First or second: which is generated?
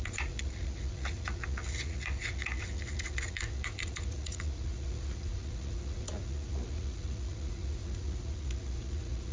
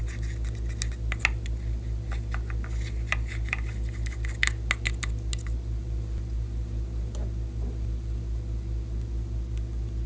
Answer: first